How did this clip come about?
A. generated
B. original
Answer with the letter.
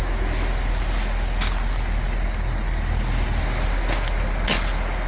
B